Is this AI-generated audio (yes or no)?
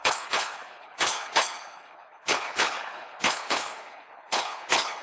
yes